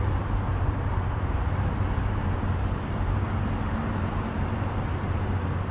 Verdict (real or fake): fake